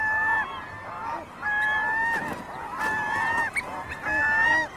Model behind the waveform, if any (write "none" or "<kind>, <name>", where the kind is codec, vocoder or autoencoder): none